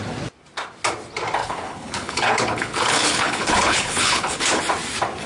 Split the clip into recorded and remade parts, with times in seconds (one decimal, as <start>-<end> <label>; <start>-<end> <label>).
0.0-1.4 recorded; 1.4-4.6 remade; 4.6-5.3 recorded